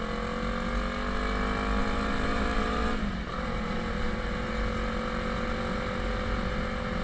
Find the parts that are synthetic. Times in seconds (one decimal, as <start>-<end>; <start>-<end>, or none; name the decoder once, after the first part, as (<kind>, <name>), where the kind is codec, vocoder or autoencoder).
1.8-4.5 (vocoder, BigVGAN v2)